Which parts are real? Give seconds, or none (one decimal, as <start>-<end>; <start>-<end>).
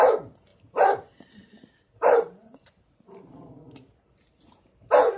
0.0-0.5; 3.6-5.2